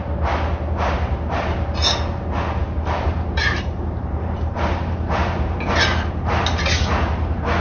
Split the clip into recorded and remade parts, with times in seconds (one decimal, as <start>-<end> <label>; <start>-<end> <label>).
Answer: 0.0-2.6 recorded; 2.6-5.6 remade; 5.6-7.6 recorded